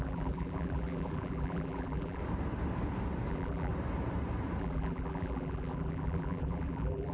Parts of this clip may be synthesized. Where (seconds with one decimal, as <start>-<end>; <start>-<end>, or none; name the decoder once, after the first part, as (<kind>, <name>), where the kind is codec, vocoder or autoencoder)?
0.0-2.2 (vocoder, BigVGAN v2); 3.3-3.7; 4.6-7.1